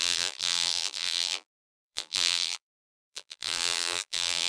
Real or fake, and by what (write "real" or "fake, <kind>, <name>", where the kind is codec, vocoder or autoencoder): fake, vocoder, BigVGAN v2